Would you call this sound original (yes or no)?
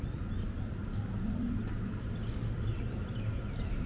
yes